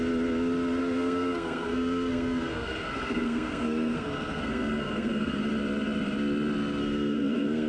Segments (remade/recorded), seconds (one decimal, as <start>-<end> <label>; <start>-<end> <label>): 0.0-0.8 recorded; 0.8-5.4 remade; 5.4-6.8 recorded; 6.8-7.7 remade